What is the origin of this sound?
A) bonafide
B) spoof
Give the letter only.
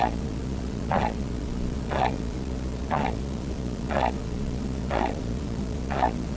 B